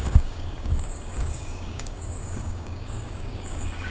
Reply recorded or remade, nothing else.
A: remade